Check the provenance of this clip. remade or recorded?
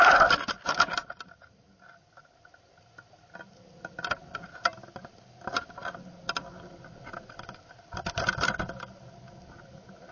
recorded